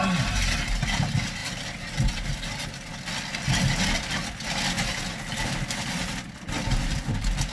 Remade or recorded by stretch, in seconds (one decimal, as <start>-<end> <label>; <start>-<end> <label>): 0.0-7.5 recorded

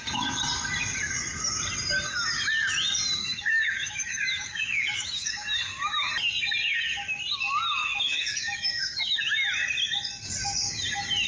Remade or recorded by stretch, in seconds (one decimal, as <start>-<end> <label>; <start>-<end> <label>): 0.0-3.2 recorded; 3.2-6.1 remade; 6.1-7.8 recorded; 7.8-9.2 remade; 9.2-11.3 recorded

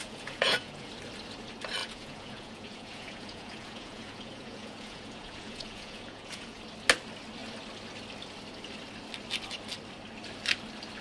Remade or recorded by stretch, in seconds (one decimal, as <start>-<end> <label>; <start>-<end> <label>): 0.0-0.9 remade; 0.9-1.8 recorded; 1.8-6.6 remade; 6.6-11.0 recorded

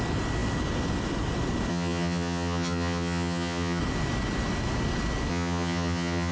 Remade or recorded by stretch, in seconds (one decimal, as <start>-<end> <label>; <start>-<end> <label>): 0.0-1.7 recorded; 1.7-3.8 remade; 3.8-5.3 recorded; 5.3-6.3 remade

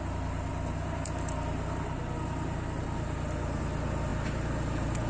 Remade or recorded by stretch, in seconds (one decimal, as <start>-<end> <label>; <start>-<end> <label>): 0.0-5.1 recorded